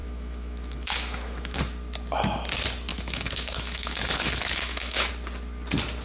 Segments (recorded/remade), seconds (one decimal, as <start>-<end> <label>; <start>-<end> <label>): 0.0-1.6 remade; 1.6-2.9 recorded; 2.9-5.1 remade; 5.1-6.0 recorded